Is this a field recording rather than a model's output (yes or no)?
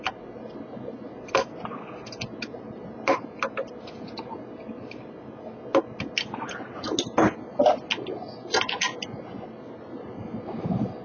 yes